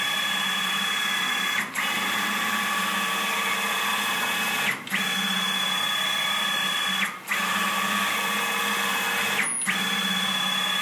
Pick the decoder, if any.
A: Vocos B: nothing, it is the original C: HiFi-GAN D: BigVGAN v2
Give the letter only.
B